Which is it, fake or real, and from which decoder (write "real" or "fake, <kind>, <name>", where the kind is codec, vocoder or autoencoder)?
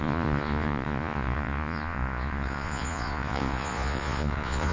fake, vocoder, Vocos